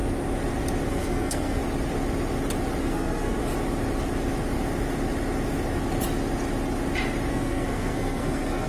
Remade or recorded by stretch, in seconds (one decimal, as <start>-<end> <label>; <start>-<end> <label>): 0.0-0.9 recorded; 0.9-1.6 remade; 1.6-2.8 recorded; 2.8-3.4 remade; 3.4-7.3 recorded; 7.3-8.7 remade